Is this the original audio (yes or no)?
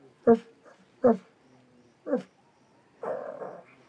yes